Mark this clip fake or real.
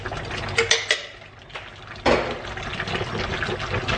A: real